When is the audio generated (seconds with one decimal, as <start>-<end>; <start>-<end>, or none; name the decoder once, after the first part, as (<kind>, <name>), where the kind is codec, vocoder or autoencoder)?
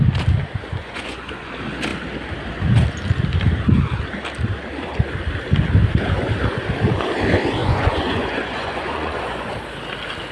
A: 0.8-1.5 (vocoder, Vocos); 7.6-9.5